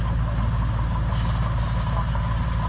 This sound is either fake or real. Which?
real